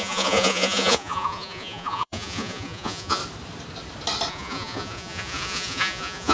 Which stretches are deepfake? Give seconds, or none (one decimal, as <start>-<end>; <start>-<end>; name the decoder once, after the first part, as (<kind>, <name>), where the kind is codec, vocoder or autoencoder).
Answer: 0.0-3.2 (vocoder, Vocos); 4.3-6.3

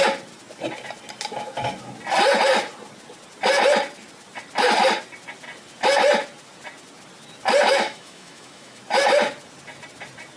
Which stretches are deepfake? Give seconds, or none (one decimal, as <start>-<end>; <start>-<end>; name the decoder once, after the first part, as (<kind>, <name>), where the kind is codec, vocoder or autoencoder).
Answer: 7.7-8.8 (autoencoder, DAC-VAE)

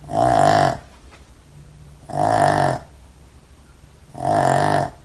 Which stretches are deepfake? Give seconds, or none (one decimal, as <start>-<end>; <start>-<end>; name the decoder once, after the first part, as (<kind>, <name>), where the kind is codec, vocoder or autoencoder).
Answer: none

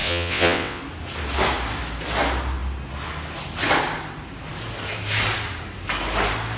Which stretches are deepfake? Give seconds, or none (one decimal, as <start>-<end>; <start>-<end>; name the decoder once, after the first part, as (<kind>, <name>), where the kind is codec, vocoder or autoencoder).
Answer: 0.0-0.8 (vocoder, WaveNeXt)

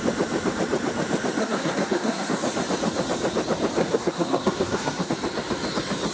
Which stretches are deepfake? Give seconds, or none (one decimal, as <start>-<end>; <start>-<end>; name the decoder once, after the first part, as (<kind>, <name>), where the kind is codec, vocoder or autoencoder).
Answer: 1.4-2.3 (codec, SNAC); 3.8-5.1

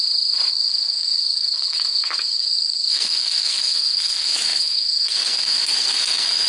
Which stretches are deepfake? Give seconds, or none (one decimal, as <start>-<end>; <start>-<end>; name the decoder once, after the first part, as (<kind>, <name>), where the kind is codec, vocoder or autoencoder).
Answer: 0.5-6.5 (codec, SNAC)

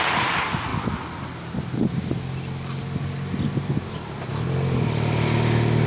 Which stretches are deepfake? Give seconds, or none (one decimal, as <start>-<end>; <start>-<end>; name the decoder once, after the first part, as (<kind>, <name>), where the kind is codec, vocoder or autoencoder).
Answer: 0.0-0.7 (vocoder, BigVGAN v2); 1.9-5.9